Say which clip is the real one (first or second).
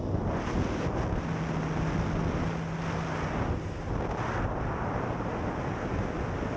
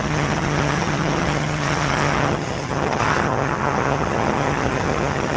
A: first